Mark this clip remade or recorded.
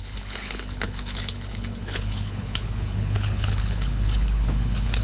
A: remade